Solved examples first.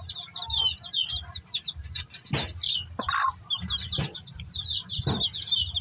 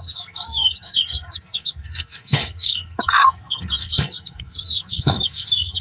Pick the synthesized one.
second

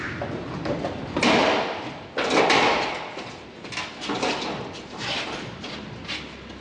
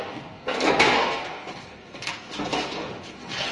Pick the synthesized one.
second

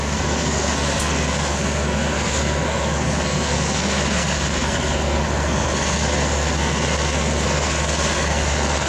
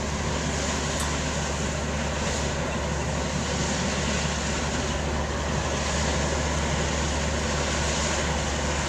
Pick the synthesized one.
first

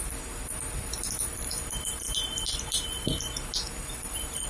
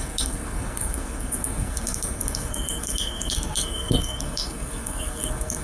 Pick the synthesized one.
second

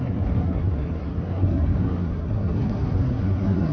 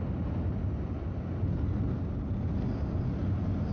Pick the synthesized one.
first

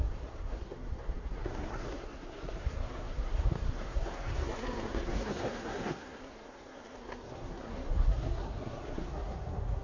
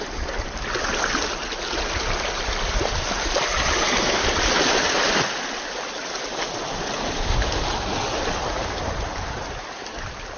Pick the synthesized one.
first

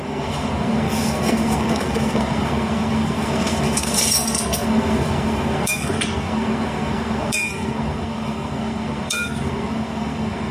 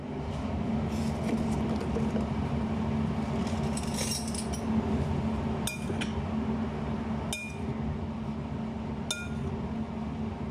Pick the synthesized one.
first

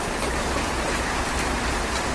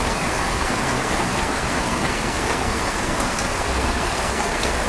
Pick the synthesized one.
second